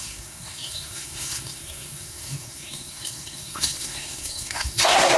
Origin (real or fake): fake